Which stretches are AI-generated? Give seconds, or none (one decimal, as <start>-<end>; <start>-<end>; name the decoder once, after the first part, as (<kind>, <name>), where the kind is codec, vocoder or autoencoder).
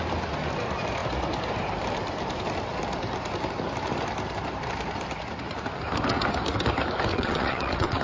7.1-8.0 (vocoder, WaveNeXt)